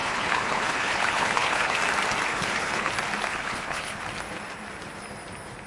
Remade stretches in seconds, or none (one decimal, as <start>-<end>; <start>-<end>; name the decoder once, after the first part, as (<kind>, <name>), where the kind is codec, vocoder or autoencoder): 0.0-1.8 (codec, HILCodec); 2.3-2.9; 3.3-4.0